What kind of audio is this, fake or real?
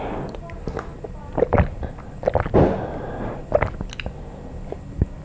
real